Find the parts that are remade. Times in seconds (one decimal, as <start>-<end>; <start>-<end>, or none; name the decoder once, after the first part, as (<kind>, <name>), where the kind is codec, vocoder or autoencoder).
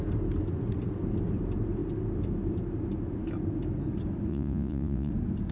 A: 4.3-5.1 (vocoder, Vocos)